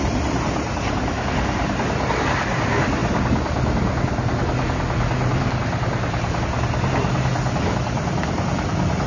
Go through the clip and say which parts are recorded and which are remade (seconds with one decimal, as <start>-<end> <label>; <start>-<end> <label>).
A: 0.0-9.1 recorded

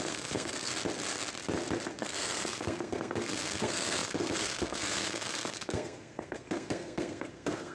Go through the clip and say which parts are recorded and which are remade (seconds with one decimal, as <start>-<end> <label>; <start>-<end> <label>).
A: 0.0-0.7 remade; 0.7-2.0 recorded; 2.0-7.7 remade